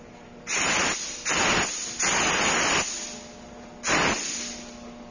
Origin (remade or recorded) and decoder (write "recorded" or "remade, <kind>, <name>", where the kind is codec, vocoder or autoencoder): recorded